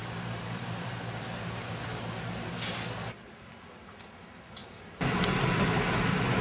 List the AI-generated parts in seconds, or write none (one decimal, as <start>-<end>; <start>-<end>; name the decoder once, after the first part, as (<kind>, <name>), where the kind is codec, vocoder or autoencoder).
0.0-3.8 (vocoder, BigVGAN v2); 4.6-5.1